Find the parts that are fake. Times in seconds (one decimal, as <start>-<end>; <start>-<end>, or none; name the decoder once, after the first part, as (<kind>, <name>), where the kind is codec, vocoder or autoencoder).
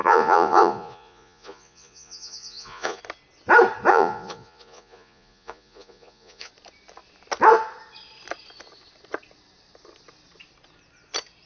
0.0-3.0 (vocoder, Vocos); 3.9-6.5